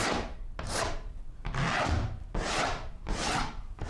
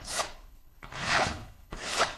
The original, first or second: first